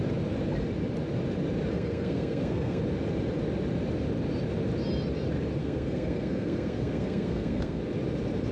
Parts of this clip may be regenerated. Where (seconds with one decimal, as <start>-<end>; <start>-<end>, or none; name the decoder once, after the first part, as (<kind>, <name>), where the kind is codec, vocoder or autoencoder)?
1.7-2.8 (codec, SNAC); 5.6-7.8